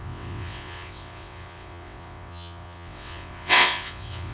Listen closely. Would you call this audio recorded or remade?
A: remade